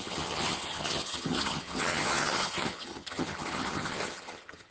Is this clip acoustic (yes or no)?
no